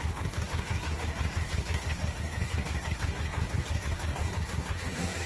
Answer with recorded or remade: remade